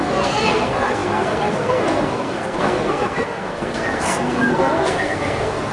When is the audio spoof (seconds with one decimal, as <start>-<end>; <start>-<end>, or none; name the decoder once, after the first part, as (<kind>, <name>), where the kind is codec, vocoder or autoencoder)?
0.0-5.7 (codec, SNAC)